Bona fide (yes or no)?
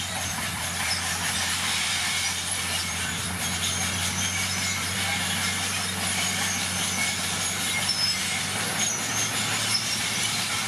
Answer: no